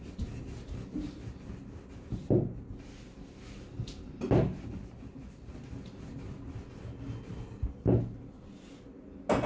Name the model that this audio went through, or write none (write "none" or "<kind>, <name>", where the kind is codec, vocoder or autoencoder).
none